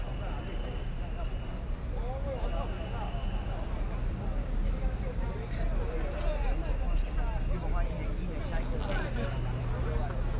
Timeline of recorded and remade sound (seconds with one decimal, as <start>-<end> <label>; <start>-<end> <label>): 0.0-10.4 recorded